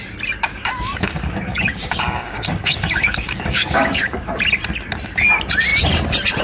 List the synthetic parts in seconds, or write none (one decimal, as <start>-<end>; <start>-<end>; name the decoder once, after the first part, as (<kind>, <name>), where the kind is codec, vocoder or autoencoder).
0.5-4.3 (codec, DAC)